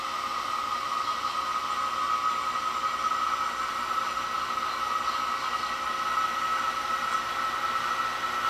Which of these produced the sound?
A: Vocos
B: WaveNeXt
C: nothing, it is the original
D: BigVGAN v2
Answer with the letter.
C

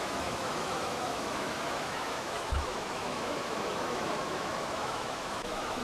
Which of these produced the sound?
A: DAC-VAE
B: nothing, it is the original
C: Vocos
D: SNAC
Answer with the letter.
A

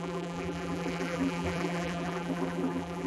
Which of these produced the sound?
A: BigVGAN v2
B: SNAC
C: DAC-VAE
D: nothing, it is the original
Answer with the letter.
A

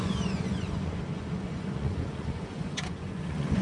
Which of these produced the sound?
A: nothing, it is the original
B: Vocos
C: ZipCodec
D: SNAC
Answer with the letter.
B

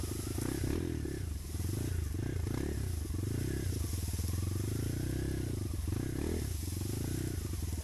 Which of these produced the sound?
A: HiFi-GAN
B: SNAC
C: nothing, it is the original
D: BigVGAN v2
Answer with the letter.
C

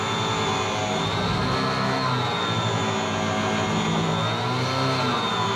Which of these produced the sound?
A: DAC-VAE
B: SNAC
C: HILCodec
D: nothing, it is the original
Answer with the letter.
D